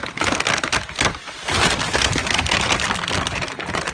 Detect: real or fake real